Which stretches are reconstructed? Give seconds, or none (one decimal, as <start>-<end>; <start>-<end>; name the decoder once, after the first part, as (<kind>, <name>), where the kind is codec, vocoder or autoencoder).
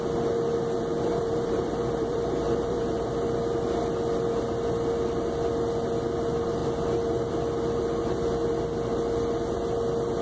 0.9-3.1 (vocoder, BigVGAN v2)